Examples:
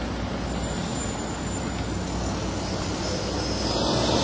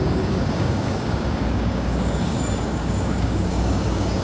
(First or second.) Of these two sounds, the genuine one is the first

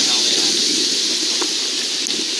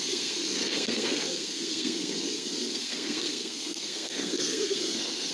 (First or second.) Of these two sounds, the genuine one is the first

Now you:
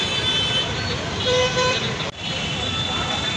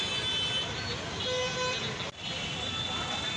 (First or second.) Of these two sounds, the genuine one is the second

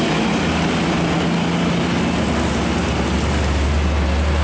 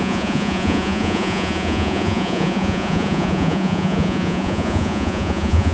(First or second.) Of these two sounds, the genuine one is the first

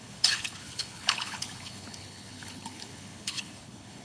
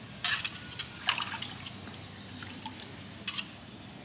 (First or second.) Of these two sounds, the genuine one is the second